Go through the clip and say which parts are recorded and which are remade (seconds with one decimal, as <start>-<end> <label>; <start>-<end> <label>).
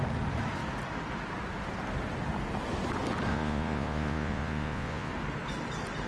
0.0-3.3 recorded; 3.3-5.1 remade; 5.1-6.1 recorded